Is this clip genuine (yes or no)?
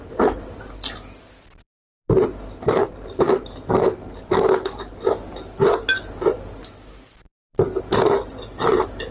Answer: yes